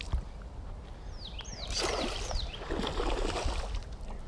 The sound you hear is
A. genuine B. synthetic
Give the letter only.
A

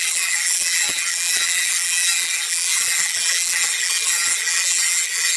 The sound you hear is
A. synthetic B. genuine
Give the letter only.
A